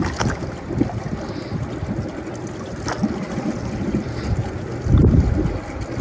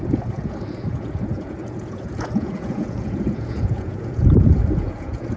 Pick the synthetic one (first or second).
second